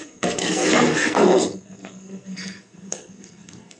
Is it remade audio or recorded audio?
remade